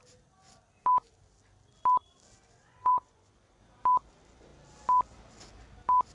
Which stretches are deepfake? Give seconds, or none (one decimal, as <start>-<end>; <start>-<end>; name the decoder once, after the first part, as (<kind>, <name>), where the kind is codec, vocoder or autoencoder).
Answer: 2.6-3.6 (vocoder, Vocos)